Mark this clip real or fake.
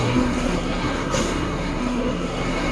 fake